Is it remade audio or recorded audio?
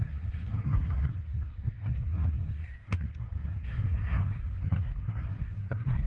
remade